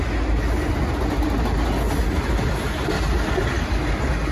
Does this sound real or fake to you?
real